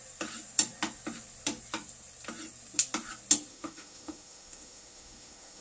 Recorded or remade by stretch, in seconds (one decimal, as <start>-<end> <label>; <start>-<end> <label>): 0.0-3.5 recorded; 3.5-5.6 remade